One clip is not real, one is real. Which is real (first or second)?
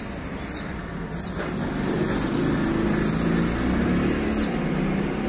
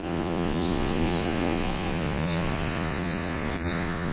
first